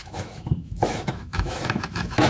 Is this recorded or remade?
remade